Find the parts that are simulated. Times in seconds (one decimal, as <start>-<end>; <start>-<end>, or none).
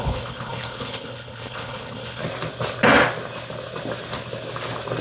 0.0-2.2